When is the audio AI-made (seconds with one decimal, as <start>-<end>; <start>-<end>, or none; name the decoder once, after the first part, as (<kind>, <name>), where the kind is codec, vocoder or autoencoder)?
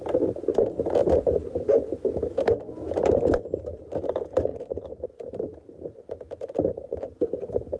0.0-0.5 (vocoder, BigVGAN v2); 3.6-7.8